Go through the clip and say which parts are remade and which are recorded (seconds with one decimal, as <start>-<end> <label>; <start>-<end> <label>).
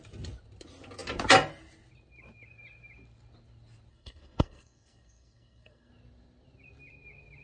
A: 0.0-3.9 recorded; 3.9-5.9 remade; 5.9-7.4 recorded